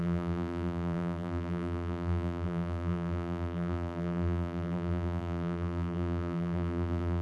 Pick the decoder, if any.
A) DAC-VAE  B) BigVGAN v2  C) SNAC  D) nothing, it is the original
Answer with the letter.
B